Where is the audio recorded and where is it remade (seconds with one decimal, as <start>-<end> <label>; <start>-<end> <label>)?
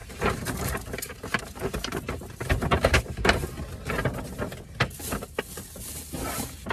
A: 0.0-3.4 remade; 3.4-6.7 recorded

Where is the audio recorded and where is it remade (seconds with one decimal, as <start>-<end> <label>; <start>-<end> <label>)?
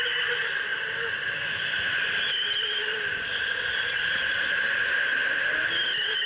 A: 0.0-0.7 remade; 0.7-3.6 recorded; 3.6-5.1 remade; 5.1-6.3 recorded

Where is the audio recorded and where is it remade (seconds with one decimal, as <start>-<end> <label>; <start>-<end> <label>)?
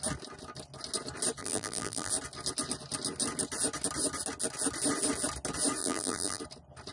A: 0.0-1.4 recorded; 1.4-2.1 remade; 2.1-5.8 recorded; 5.8-6.4 remade; 6.4-6.9 recorded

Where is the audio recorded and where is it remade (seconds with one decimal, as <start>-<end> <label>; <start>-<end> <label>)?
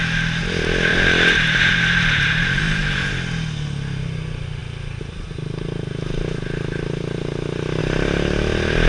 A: 0.0-0.9 recorded; 0.9-3.1 remade; 3.1-8.9 recorded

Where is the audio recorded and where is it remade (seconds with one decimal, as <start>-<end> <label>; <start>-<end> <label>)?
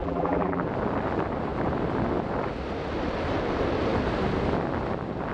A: 0.0-0.6 remade; 0.6-5.3 recorded